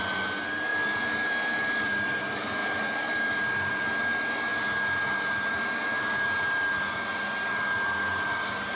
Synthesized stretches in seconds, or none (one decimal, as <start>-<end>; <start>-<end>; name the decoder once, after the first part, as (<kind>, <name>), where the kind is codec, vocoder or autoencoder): 0.7-2.2 (vocoder, BigVGAN v2); 2.6-3.7